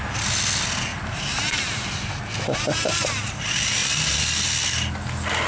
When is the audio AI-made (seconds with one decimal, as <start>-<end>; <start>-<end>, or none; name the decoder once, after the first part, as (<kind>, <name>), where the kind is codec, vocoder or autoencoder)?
0.9-3.4 (vocoder, BigVGAN v2)